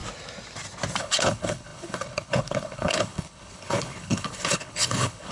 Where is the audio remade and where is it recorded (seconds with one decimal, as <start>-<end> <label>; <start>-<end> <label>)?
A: 0.0-1.0 recorded; 1.0-5.3 remade